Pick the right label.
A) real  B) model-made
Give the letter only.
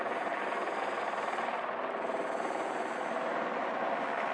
A